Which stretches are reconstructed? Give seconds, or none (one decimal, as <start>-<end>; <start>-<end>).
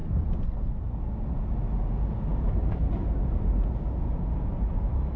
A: 0.0-0.7; 2.3-5.2